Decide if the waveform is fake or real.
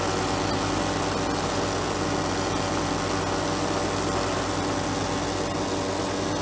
real